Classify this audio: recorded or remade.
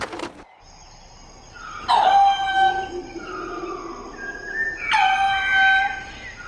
recorded